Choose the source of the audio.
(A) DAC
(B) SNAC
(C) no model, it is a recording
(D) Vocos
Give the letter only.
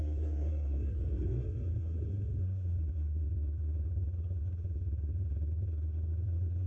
B